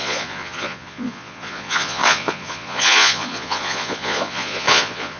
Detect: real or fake fake